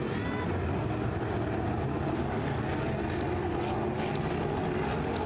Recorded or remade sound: recorded